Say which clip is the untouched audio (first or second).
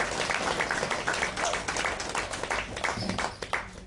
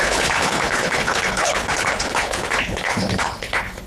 first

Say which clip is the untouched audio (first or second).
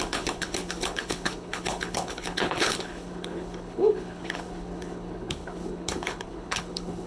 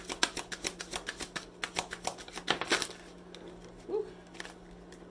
second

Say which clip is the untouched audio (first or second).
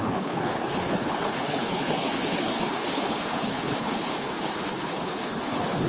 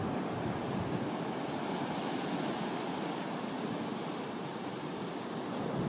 second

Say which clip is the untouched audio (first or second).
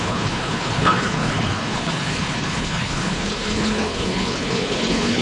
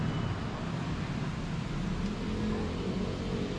second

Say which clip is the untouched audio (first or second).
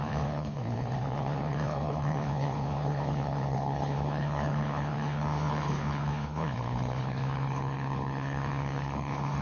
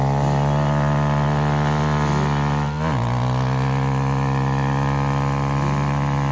second